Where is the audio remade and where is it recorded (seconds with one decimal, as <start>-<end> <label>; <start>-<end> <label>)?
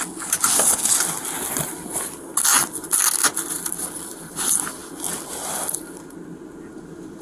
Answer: 0.0-7.2 recorded